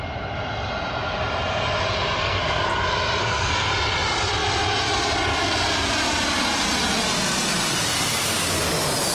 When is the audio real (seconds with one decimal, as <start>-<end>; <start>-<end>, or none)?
0.0-2.2; 2.8-3.2; 3.7-9.1